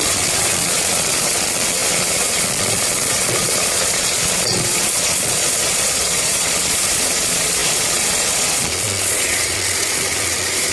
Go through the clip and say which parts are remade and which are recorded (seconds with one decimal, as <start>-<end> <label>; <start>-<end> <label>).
0.0-10.7 remade